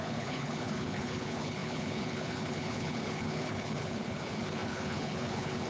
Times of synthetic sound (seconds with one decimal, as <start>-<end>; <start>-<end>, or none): 0.0-5.7